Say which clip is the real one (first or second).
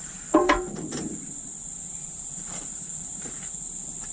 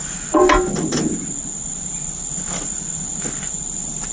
second